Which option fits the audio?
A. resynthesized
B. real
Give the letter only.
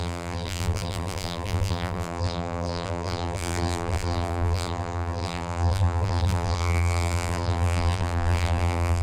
A